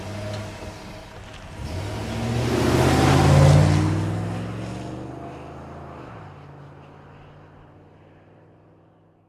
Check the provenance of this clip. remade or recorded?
recorded